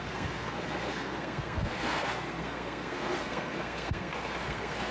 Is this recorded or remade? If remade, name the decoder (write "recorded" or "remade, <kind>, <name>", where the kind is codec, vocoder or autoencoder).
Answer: remade, codec, SNAC